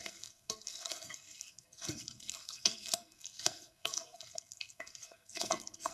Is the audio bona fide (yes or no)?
no